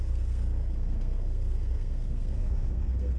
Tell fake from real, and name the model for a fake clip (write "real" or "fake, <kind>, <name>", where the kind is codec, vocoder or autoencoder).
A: fake, codec, SNAC